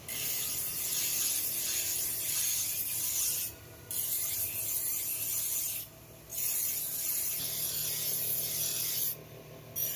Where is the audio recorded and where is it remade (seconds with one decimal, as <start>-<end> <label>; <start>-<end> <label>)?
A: 0.0-10.0 recorded